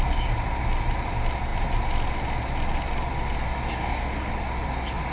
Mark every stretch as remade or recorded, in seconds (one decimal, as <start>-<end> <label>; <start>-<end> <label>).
0.0-3.8 recorded; 3.8-4.3 remade; 4.3-5.1 recorded